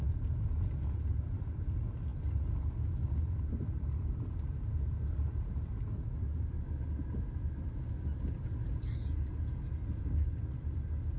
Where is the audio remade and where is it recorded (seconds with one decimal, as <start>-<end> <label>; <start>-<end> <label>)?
0.0-11.2 recorded